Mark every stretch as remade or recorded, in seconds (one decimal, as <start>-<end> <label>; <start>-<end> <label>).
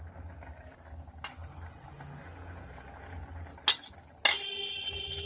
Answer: 0.0-5.3 recorded